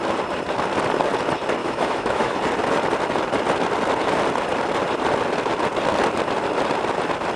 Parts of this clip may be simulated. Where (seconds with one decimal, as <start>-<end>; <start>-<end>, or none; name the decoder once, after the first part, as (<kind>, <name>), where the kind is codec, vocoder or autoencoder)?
1.6-2.4 (autoencoder, DAC-VAE)